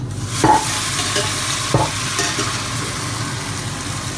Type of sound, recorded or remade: recorded